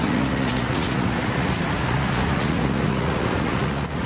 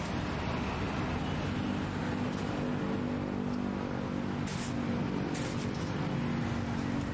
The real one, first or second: second